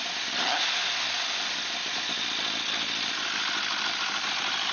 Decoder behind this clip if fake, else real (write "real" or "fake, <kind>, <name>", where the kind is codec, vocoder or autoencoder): real